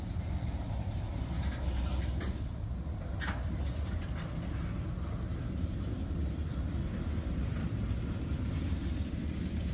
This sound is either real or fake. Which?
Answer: real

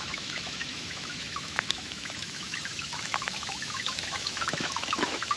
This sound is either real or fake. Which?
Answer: fake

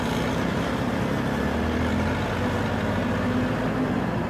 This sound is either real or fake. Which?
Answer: real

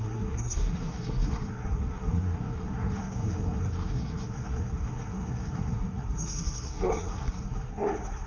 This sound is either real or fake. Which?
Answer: fake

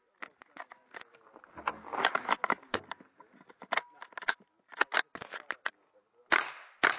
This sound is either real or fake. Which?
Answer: real